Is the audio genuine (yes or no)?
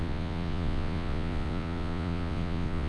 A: no